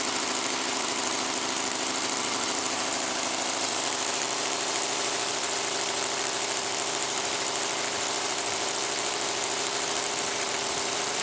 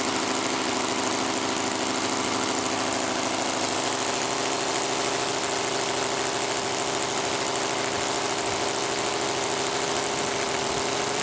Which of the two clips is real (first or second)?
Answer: second